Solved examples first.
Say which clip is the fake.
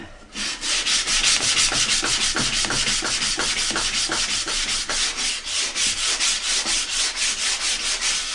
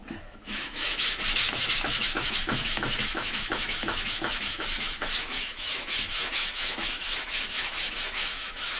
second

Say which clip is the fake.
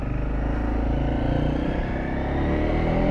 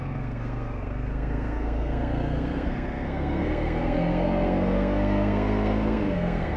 second